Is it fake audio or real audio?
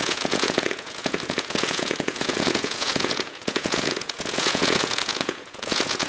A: fake